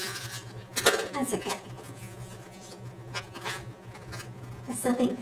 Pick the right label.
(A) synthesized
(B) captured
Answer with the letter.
A